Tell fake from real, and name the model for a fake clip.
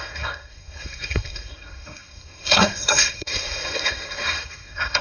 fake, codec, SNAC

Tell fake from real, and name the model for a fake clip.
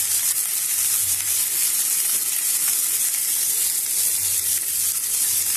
real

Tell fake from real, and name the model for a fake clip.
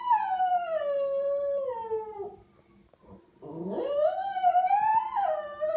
real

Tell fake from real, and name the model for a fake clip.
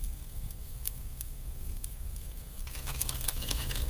fake, codec, SNAC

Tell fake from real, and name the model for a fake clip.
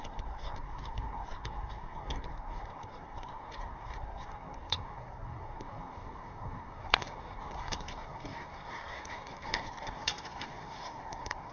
fake, codec, SNAC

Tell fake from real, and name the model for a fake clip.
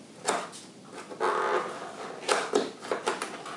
real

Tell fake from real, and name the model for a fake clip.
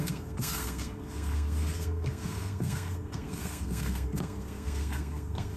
fake, codec, SNAC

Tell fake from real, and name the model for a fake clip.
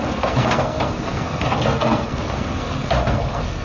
fake, codec, SNAC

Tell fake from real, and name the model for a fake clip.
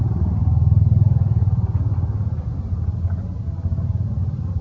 real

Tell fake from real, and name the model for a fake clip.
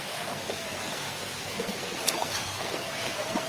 fake, codec, SNAC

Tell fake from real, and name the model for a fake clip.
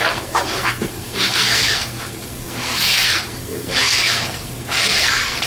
fake, codec, SNAC